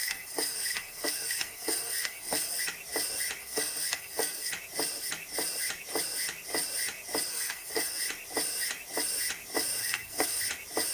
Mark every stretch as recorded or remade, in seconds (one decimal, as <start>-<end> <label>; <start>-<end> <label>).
0.0-2.6 remade; 2.6-3.4 recorded; 3.4-4.5 remade; 4.5-7.3 recorded; 7.3-8.0 remade; 8.0-9.8 recorded; 9.8-10.4 remade; 10.4-10.9 recorded